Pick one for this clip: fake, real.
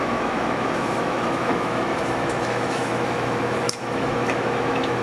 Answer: fake